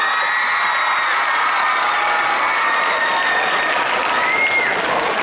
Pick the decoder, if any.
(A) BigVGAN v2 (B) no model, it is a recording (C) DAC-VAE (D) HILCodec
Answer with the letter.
B